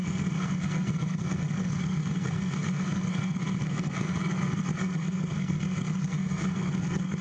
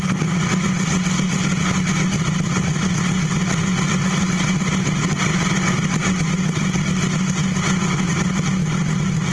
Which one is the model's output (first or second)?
first